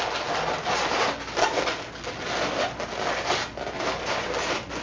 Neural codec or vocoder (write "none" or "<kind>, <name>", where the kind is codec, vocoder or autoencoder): none